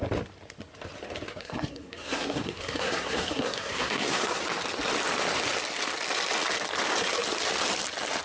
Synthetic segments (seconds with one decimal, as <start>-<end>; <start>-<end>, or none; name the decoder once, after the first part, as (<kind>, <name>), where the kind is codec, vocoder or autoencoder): 1.3-4.4 (codec, SNAC)